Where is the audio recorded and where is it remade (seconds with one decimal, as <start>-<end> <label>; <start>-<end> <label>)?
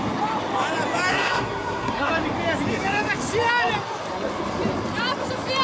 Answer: 0.0-1.1 recorded; 1.1-2.1 remade; 2.1-5.6 recorded